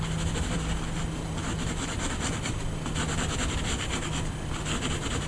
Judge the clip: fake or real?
real